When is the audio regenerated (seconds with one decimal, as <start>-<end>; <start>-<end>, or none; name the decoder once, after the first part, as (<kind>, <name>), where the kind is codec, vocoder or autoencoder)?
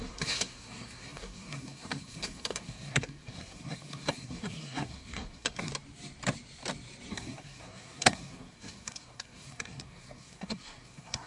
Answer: 0.0-5.7 (codec, SNAC); 7.1-11.3